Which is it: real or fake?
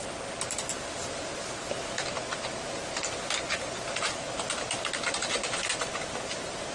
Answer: real